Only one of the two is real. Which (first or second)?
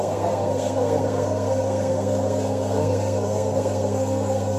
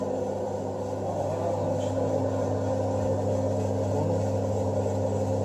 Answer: second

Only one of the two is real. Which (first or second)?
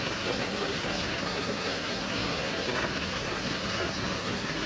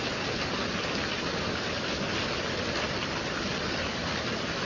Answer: second